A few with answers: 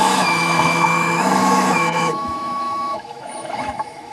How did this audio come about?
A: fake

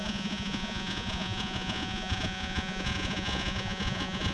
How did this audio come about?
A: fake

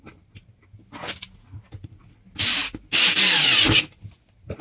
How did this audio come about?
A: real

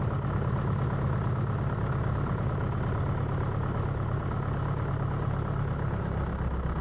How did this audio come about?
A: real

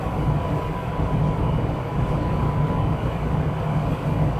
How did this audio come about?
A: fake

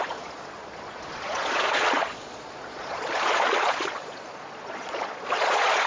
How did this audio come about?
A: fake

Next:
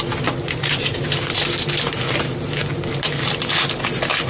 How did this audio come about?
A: real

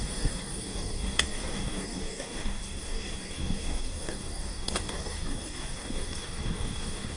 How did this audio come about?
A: fake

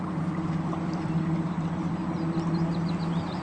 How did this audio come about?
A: real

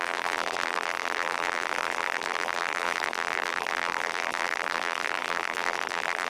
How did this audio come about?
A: fake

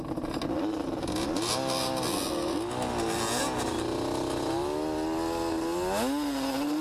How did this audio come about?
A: real